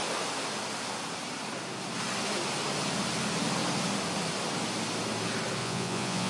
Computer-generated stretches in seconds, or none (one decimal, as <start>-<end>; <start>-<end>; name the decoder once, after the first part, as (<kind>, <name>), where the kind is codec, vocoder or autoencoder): 5.6-6.3 (vocoder, Vocos)